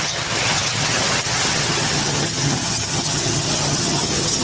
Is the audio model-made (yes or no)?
yes